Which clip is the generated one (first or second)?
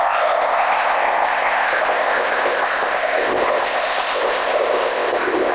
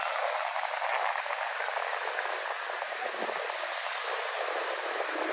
first